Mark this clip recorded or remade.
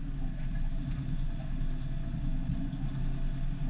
recorded